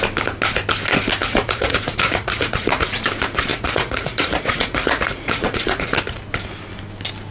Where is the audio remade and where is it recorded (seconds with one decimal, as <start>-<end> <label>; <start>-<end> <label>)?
0.0-1.2 recorded; 1.2-3.0 remade; 3.0-3.5 recorded; 3.5-6.0 remade; 6.0-7.3 recorded